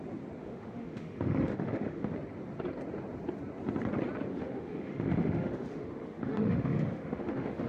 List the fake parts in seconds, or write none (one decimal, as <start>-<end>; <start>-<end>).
0.4-2.1; 4.3-7.7